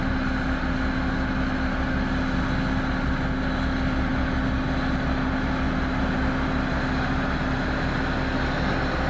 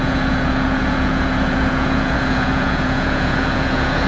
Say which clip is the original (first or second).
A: first